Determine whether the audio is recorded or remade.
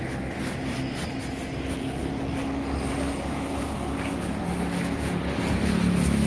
recorded